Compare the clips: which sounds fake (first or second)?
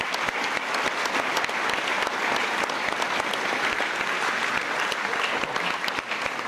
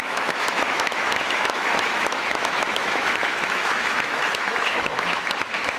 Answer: second